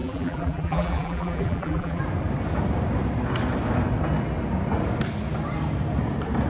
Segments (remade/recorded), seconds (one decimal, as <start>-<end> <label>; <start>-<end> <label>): 0.0-2.0 remade; 2.0-6.5 recorded